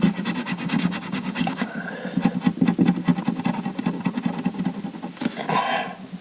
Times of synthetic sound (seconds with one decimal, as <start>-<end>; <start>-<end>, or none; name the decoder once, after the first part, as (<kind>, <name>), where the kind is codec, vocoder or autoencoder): 0.4-1.9 (codec, DAC)